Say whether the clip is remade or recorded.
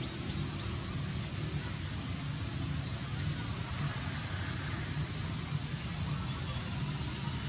recorded